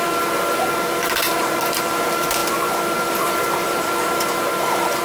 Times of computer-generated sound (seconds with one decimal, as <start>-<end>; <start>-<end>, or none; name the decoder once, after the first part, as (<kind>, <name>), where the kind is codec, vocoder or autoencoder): 0.0-5.0 (vocoder, BigVGAN v2)